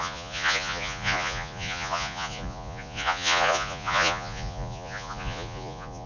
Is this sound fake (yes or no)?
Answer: yes